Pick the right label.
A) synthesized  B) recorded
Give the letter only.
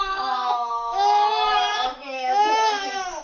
A